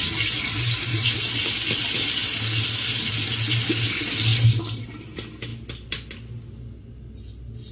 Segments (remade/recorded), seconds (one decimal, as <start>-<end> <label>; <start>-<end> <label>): 0.0-7.7 recorded